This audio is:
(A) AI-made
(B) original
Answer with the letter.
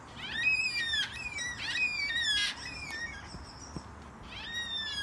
B